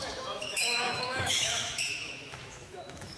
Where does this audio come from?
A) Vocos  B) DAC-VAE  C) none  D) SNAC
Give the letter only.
B